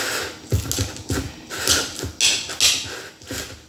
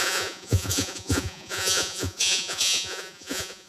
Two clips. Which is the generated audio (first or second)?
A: second